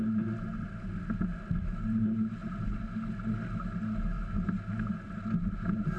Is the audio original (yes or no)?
yes